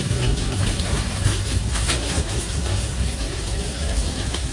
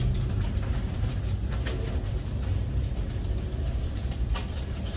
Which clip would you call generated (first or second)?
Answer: first